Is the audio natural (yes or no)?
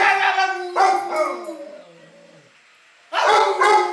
yes